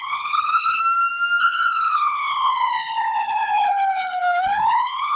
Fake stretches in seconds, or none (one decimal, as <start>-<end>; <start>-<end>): 0.0-0.8; 1.4-5.2